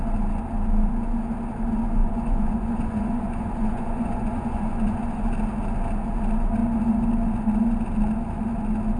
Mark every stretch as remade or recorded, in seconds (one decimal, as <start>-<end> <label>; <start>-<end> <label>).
0.0-2.0 recorded; 2.0-5.2 remade; 5.2-9.0 recorded